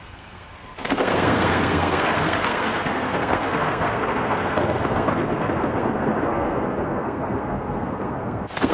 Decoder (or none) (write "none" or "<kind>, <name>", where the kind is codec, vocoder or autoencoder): codec, SNAC